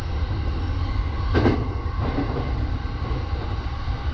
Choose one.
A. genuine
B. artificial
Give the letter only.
A